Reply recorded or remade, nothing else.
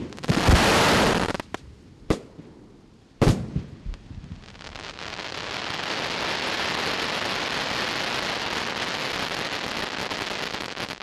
recorded